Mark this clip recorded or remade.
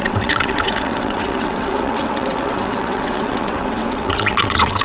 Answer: remade